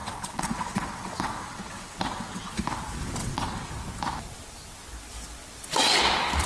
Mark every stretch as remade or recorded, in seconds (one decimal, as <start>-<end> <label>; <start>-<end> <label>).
0.0-2.5 remade; 2.5-3.2 recorded; 3.2-3.7 remade; 3.7-6.5 recorded